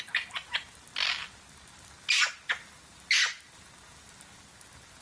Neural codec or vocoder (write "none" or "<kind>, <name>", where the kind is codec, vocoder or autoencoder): none